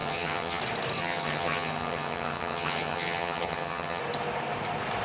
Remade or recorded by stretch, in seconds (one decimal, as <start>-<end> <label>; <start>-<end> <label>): 0.0-0.6 remade; 0.6-1.0 recorded; 1.0-4.0 remade; 4.0-5.0 recorded

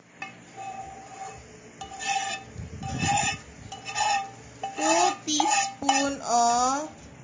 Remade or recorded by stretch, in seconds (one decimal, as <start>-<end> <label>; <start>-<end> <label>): 0.0-7.2 recorded

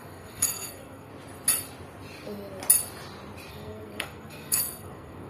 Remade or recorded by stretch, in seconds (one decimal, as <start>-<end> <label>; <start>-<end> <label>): 0.0-1.1 remade; 1.1-3.5 recorded; 3.5-5.3 remade

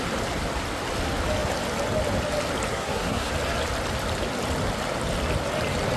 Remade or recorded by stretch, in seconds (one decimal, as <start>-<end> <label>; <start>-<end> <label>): 0.0-2.7 recorded; 2.7-3.3 remade; 3.3-6.0 recorded